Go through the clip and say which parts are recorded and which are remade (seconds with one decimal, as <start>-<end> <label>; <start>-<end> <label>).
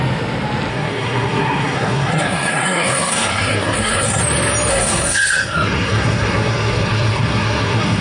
0.0-0.7 recorded; 0.7-4.2 remade; 4.2-4.7 recorded; 4.7-8.0 remade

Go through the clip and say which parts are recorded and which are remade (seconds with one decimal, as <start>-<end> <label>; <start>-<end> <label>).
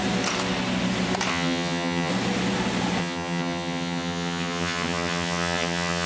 0.0-1.3 recorded; 1.3-2.1 remade; 2.1-3.0 recorded; 3.0-6.1 remade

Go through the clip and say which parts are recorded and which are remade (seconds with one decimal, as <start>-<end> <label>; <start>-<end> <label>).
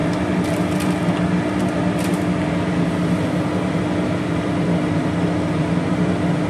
0.0-6.5 recorded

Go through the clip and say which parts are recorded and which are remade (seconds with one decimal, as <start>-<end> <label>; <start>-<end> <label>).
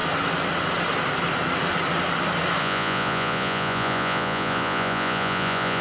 0.0-2.6 recorded; 2.6-5.8 remade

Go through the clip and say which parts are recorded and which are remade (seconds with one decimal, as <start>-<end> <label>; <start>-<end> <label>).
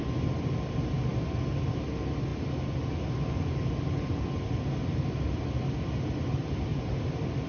0.0-7.5 recorded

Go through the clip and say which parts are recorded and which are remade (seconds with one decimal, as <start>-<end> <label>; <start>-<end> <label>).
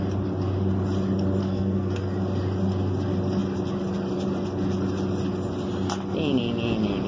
0.0-1.4 recorded; 1.4-1.9 remade; 1.9-7.1 recorded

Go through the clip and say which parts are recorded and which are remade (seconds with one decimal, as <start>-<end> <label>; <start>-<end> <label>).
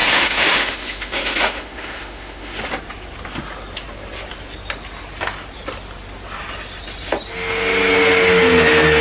0.0-2.6 remade; 2.6-9.0 recorded